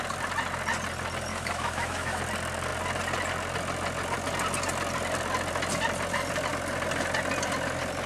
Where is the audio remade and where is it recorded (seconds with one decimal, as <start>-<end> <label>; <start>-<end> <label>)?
0.0-1.3 recorded; 1.3-2.2 remade; 2.2-8.1 recorded